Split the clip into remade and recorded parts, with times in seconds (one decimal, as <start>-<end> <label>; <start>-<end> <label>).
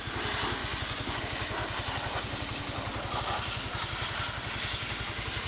0.0-0.6 recorded; 0.6-1.2 remade; 1.2-5.5 recorded